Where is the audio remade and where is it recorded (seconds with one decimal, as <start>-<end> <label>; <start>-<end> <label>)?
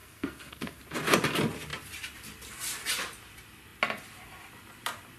0.0-0.8 remade; 0.8-5.2 recorded